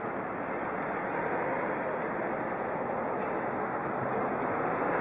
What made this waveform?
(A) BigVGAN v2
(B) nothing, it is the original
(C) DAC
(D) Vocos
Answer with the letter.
B